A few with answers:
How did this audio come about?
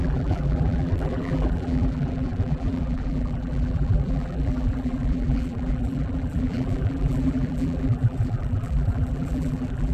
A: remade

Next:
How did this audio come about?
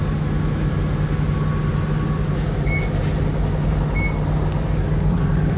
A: recorded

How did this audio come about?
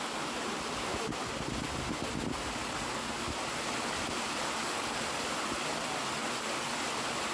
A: recorded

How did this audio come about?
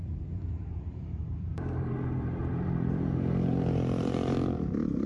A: remade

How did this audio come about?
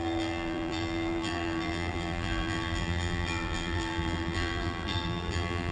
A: remade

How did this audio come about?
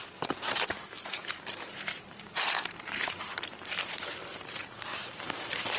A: remade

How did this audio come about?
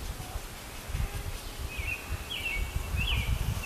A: recorded